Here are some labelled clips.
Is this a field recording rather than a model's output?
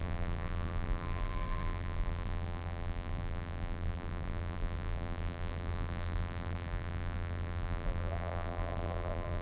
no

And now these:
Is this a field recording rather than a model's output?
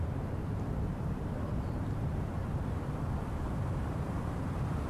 no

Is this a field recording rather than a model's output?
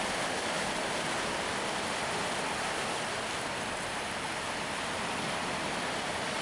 yes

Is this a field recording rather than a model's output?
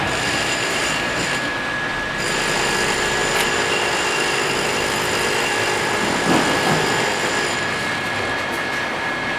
yes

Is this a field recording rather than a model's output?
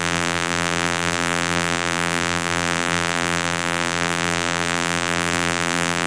no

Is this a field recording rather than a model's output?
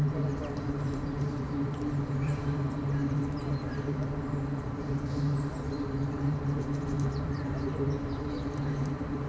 no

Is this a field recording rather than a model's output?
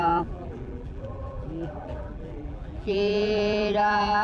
no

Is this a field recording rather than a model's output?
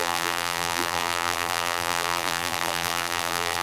no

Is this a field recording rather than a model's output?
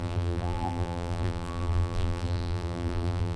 no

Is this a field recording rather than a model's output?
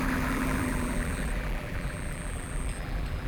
no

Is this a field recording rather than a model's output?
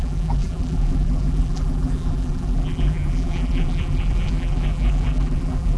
no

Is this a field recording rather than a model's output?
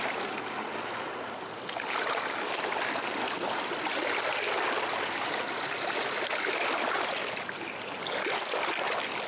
yes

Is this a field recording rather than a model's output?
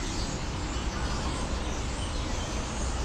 yes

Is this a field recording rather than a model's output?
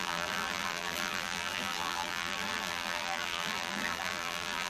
no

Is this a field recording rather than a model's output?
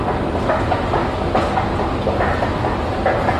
yes